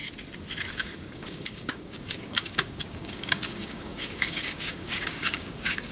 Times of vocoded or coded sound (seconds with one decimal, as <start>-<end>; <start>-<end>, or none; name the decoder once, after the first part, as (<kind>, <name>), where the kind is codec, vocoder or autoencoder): 0.7-5.9 (codec, DAC)